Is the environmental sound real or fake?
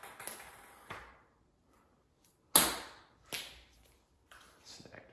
real